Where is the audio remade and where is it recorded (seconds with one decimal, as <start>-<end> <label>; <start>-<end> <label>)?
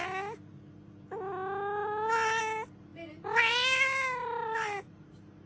0.0-4.2 recorded; 4.2-5.5 remade